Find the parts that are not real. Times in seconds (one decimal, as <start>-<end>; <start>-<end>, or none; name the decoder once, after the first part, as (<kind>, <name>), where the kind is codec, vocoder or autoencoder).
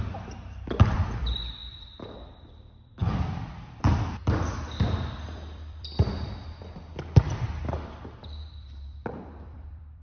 0.0-10.0 (vocoder, BigVGAN v2)